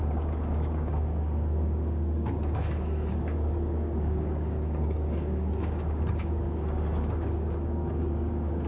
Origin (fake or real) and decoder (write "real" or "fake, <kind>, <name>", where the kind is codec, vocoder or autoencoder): fake, codec, DAC